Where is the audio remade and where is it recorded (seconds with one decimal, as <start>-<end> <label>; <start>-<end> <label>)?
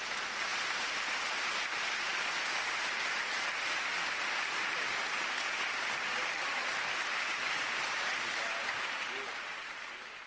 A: 0.0-10.3 recorded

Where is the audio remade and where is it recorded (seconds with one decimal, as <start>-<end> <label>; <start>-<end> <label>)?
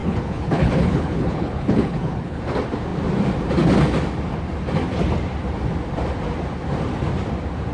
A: 0.0-2.4 remade; 2.4-7.7 recorded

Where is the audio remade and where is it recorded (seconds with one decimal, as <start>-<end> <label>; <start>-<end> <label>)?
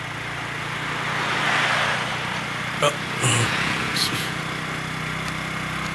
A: 0.0-3.2 recorded; 3.2-4.4 remade; 4.4-5.9 recorded